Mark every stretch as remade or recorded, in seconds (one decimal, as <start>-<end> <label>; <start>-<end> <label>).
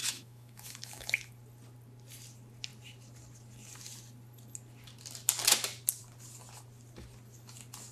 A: 0.0-1.3 remade; 1.3-7.9 recorded